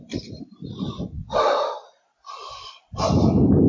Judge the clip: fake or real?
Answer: real